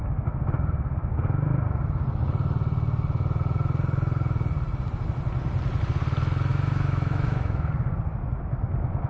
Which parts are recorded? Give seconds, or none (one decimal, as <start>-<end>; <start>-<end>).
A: 0.0-6.5; 7.7-9.1